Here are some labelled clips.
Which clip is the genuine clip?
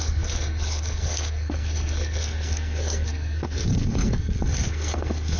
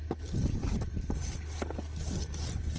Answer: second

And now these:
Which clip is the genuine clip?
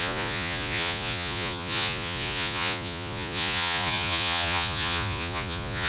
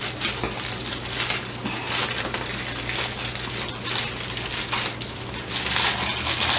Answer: second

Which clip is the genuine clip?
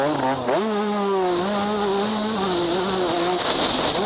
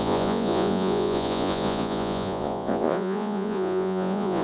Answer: first